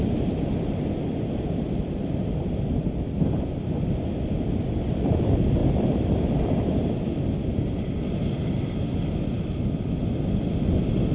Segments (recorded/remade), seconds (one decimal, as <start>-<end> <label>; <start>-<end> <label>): 0.0-11.1 recorded